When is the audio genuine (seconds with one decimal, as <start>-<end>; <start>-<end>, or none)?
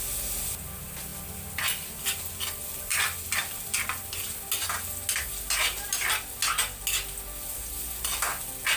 0.0-1.1; 2.2-2.9; 3.6-8.8